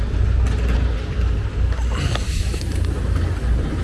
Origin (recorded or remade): recorded